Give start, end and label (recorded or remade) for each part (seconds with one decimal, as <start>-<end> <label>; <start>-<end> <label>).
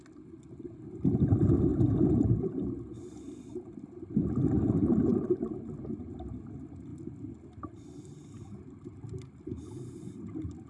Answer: 0.0-1.7 recorded; 1.7-2.7 remade; 2.7-5.1 recorded; 5.1-6.0 remade; 6.0-10.7 recorded